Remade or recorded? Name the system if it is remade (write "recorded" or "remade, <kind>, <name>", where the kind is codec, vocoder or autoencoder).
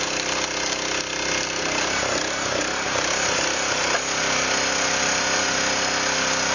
recorded